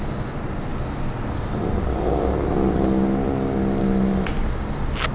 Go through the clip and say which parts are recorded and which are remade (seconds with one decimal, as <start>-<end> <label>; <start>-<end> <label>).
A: 0.0-5.1 recorded